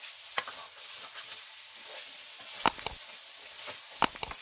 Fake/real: real